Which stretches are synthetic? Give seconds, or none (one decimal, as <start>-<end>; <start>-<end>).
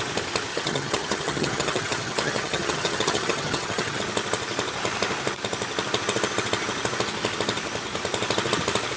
0.5-4.0